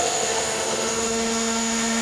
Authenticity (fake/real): fake